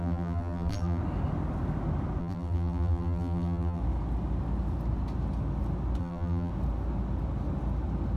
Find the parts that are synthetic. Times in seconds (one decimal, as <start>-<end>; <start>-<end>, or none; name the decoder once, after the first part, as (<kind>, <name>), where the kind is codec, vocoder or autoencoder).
0.0-1.0 (vocoder, BigVGAN v2); 2.2-3.8; 6.0-6.5